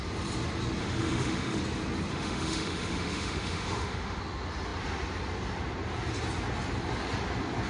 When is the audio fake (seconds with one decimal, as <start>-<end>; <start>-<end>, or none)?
0.8-1.6; 2.1-4.2

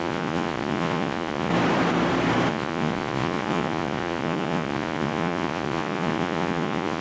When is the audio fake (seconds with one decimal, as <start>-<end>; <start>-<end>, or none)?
0.0-1.5; 2.5-7.0

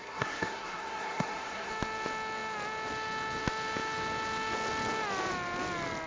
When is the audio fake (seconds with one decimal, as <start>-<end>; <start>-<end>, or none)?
0.0-1.7